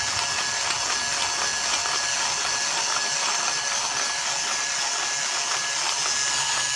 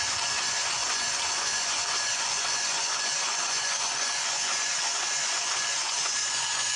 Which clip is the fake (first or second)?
second